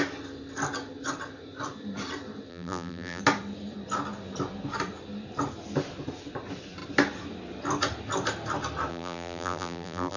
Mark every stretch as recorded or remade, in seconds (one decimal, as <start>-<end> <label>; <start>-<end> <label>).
0.0-2.5 recorded; 2.5-3.2 remade; 3.2-8.9 recorded; 8.9-10.2 remade